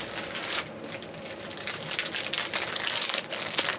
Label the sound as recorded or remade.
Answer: recorded